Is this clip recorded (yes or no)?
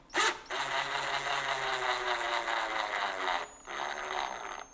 yes